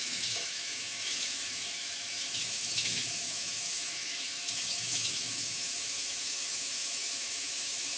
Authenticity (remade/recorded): remade